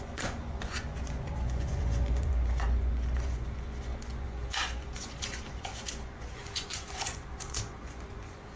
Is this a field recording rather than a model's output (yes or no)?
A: no